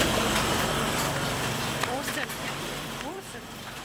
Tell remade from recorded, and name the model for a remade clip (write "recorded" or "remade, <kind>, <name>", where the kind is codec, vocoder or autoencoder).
remade, vocoder, BigVGAN v2